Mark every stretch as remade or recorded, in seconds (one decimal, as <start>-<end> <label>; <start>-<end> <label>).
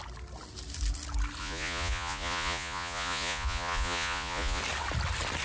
0.0-1.4 recorded; 1.4-4.6 remade; 4.6-5.4 recorded